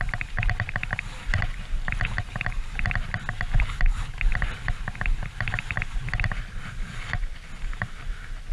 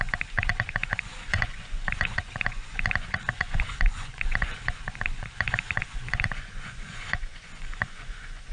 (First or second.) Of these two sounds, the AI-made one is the second